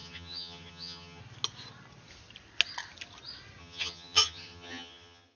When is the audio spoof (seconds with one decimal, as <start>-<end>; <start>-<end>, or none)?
0.0-1.2; 3.6-5.4